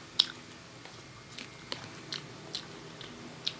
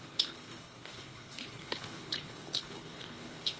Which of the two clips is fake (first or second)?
second